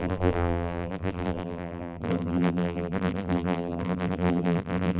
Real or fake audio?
fake